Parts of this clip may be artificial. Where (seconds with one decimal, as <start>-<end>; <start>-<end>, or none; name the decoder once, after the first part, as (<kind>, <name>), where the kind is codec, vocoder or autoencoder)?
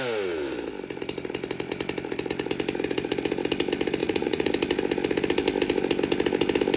4.0-4.5 (vocoder, Vocos)